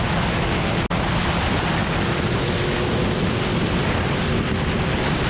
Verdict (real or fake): real